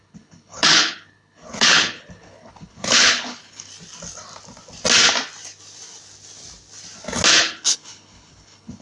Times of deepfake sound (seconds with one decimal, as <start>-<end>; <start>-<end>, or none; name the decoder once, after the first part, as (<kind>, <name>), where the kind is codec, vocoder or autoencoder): 0.0-3.7 (codec, HILCodec); 7.4-8.8